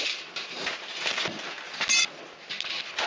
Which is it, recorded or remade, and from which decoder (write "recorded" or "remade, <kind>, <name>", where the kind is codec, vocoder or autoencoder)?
recorded